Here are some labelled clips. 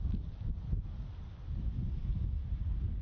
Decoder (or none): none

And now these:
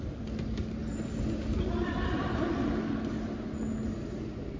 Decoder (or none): none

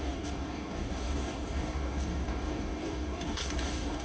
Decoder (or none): codec, DAC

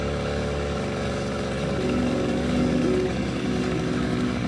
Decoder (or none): codec, DAC